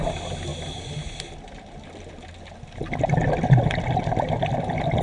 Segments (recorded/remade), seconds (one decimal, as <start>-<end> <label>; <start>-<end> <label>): 0.0-5.0 recorded

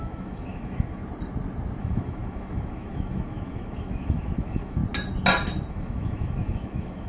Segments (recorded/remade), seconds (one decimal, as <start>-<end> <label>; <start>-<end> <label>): 0.0-1.0 remade; 1.0-1.8 recorded; 1.8-4.8 remade; 4.8-5.7 recorded; 5.7-7.1 remade